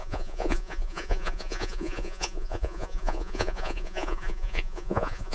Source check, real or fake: fake